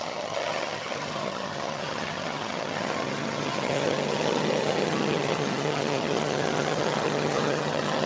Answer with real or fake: fake